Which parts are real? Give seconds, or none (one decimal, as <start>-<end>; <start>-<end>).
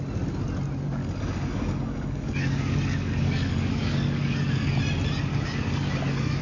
0.0-1.0; 4.8-5.3